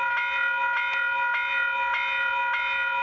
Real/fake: real